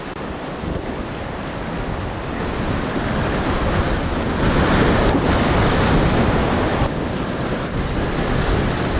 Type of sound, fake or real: real